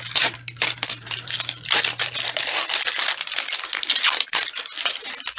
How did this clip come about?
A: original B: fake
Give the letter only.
B